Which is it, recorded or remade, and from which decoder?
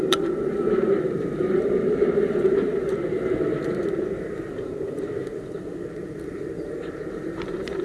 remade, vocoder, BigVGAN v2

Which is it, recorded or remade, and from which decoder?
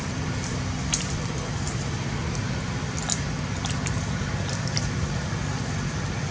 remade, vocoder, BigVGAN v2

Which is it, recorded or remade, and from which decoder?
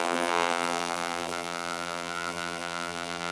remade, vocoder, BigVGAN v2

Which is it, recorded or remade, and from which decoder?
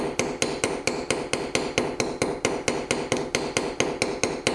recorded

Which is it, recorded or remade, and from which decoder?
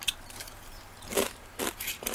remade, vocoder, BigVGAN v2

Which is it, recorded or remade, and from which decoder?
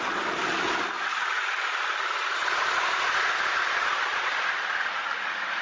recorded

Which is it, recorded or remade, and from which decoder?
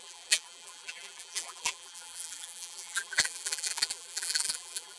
remade, vocoder, BigVGAN v2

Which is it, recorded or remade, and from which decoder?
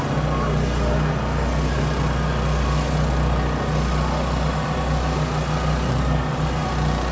recorded